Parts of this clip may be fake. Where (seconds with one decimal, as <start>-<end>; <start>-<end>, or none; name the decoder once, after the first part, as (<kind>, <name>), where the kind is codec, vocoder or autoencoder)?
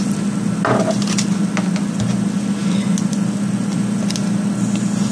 none